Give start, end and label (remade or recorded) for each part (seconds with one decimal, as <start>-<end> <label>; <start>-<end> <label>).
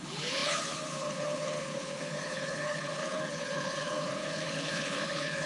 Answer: 0.0-5.5 remade